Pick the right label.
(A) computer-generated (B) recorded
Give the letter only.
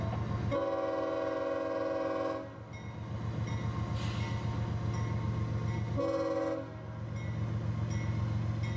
B